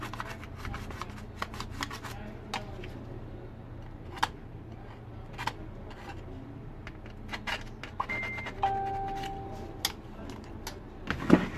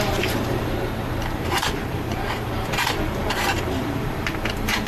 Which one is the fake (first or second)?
second